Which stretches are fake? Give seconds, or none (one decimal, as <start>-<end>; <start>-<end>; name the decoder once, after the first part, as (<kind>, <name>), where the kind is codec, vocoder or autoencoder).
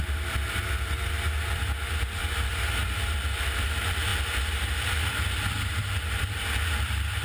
0.0-2.2 (vocoder, BigVGAN v2); 2.8-4.1; 4.8-7.2